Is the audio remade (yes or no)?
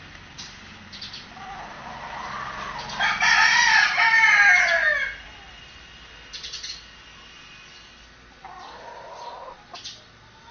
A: no